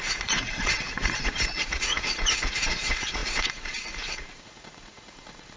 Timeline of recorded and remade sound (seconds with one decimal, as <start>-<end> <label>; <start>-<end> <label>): 0.0-5.6 remade